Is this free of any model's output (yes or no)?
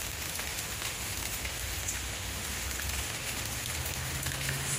no